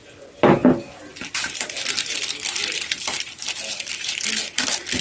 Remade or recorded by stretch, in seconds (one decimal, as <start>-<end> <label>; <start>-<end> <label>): 0.0-5.0 recorded